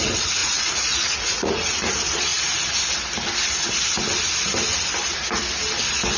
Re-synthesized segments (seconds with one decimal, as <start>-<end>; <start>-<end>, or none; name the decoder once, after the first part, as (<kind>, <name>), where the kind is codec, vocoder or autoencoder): 0.4-1.9 (vocoder, Vocos)